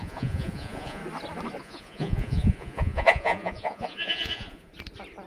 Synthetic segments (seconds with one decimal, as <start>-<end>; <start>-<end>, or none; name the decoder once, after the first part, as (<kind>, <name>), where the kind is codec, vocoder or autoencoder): 0.0-1.0 (vocoder, Vocos); 1.6-4.7